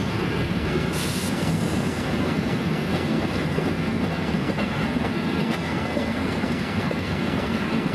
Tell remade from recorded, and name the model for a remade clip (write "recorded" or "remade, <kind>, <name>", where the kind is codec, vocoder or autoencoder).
remade, codec, SNAC